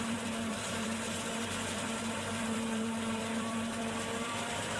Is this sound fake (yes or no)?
yes